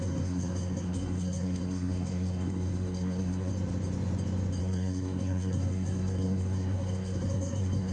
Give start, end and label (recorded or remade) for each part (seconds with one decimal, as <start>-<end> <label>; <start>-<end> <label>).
0.0-3.5 remade; 3.5-4.6 recorded; 4.6-7.9 remade

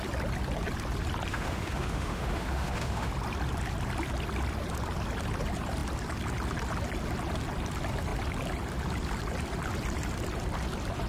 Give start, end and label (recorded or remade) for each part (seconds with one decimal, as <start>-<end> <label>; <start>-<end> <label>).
0.0-1.3 recorded; 1.3-3.1 remade; 3.1-11.1 recorded

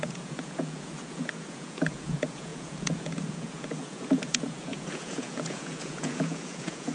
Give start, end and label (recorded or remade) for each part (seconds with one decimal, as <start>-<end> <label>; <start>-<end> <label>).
0.0-6.9 remade

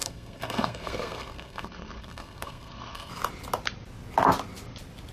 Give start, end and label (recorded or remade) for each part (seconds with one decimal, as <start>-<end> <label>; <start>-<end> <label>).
0.0-3.1 remade; 3.1-5.1 recorded

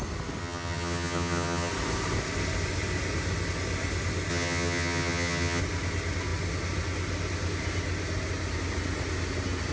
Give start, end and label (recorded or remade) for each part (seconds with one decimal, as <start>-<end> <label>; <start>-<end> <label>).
0.0-0.4 recorded; 0.4-1.7 remade; 1.7-4.3 recorded; 4.3-5.6 remade; 5.6-9.7 recorded

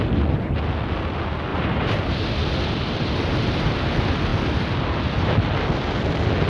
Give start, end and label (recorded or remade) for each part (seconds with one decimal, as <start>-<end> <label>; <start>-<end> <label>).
0.0-1.5 recorded; 1.5-2.2 remade; 2.2-6.5 recorded